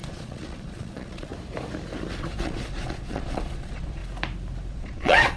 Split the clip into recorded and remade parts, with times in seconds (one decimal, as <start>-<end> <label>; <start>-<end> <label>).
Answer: 0.0-1.3 remade; 1.3-2.2 recorded; 2.2-4.0 remade; 4.0-4.7 recorded; 4.7-5.4 remade